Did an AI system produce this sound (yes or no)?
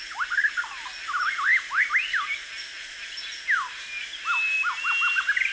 no